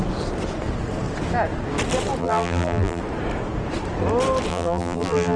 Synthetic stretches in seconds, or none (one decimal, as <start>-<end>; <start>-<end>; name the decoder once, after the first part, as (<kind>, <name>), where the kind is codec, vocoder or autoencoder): 2.2-3.0 (vocoder, BigVGAN v2); 4.5-5.4